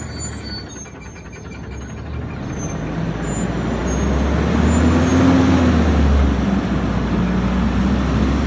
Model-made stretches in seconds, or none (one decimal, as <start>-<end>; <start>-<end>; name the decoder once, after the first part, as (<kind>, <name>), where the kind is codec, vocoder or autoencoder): none